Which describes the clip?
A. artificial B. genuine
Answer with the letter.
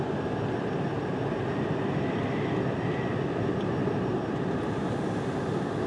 B